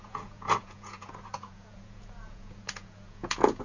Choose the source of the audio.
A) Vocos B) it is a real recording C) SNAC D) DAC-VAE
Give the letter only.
A